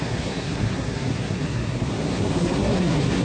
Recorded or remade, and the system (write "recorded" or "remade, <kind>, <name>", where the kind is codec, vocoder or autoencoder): remade, codec, SNAC